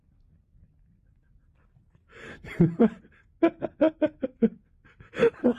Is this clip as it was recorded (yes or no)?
yes